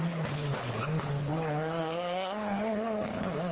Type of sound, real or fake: fake